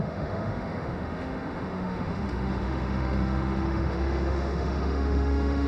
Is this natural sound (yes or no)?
no